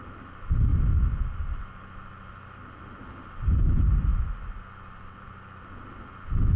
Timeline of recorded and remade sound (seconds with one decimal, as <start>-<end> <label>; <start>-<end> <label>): 0.0-6.6 recorded

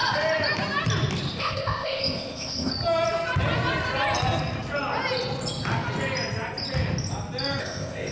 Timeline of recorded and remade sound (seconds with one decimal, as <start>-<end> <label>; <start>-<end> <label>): 0.0-1.4 recorded; 1.4-2.7 remade; 2.7-7.6 recorded; 7.6-8.1 remade